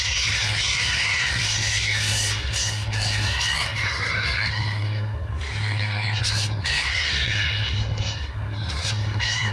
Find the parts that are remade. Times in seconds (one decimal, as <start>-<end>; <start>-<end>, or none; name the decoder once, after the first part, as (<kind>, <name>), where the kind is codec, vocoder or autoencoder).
0.0-9.5 (codec, SNAC)